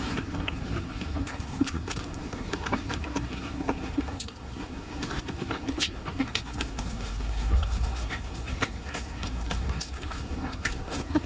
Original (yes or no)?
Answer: no